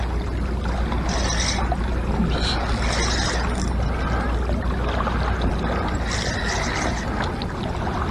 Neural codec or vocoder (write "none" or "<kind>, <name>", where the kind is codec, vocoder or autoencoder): none